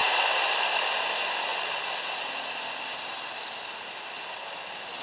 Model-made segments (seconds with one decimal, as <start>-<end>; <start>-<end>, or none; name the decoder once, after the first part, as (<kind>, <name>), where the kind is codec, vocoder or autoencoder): 0.0-0.9 (vocoder, BigVGAN v2); 1.5-4.5